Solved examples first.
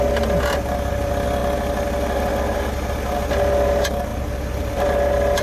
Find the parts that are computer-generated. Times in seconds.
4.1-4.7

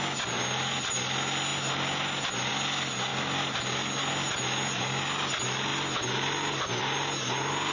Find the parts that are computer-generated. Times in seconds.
none

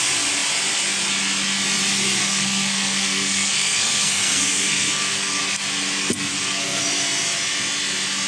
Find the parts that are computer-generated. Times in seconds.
2.2-5.4; 6.3-6.8

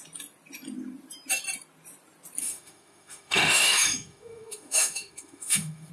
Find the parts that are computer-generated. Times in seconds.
2.4-5.9

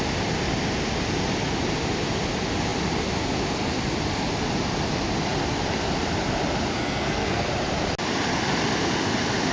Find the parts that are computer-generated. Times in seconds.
6.7-7.5